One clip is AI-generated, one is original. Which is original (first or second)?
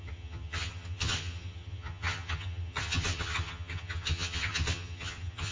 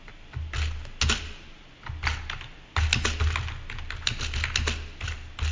second